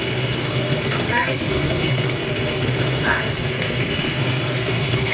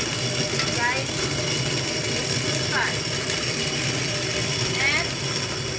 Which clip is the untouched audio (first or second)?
second